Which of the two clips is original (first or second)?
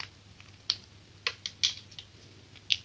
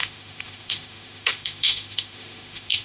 first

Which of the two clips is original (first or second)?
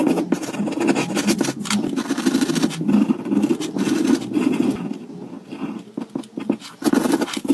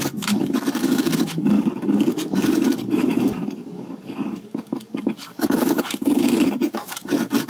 first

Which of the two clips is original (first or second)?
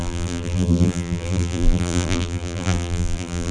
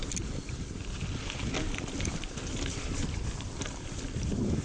second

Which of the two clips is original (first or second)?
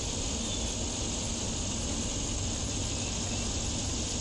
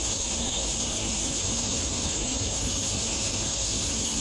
first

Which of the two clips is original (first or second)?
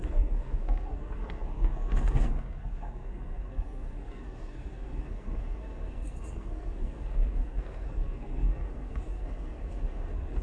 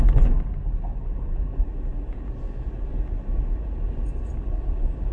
second